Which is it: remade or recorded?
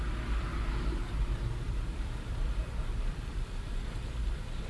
remade